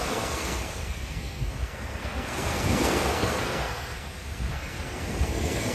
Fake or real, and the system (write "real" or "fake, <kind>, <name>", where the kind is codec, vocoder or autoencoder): fake, codec, SNAC